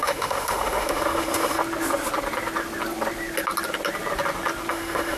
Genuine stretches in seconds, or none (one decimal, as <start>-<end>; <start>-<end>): 1.6-4.7